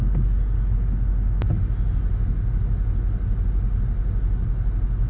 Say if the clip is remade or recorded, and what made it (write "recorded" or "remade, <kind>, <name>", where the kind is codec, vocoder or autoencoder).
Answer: recorded